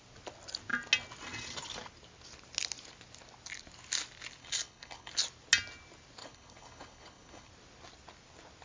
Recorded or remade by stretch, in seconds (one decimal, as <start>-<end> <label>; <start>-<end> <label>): 0.0-4.4 recorded; 4.4-5.1 remade; 5.1-6.2 recorded; 6.2-7.5 remade; 7.5-8.6 recorded

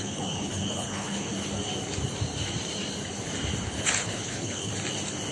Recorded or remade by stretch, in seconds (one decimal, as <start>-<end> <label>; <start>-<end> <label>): 0.0-1.3 remade; 1.3-3.6 recorded; 3.6-4.7 remade; 4.7-5.3 recorded

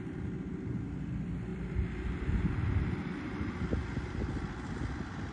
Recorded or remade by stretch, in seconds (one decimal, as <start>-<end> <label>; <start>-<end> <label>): 0.0-5.3 recorded

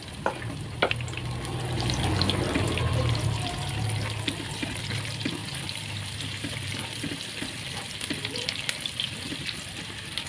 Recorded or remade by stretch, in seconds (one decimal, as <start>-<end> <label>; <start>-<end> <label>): 0.0-10.3 recorded

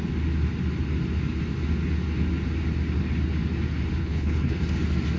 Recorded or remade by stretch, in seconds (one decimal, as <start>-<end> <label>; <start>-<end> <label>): 0.0-4.0 recorded; 4.0-4.6 remade; 4.6-5.2 recorded